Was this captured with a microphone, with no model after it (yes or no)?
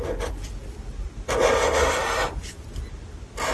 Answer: yes